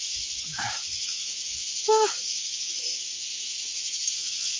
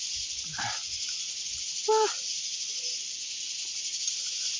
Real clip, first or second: second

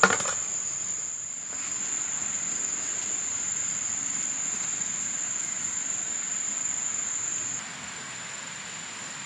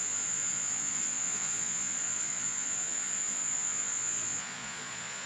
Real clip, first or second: first